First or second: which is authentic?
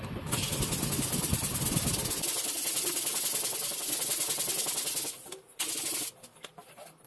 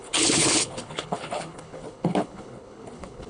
first